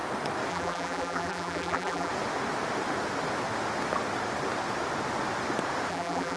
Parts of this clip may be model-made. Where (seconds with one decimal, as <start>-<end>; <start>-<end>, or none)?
0.5-2.1; 5.9-6.4